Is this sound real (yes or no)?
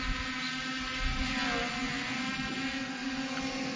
yes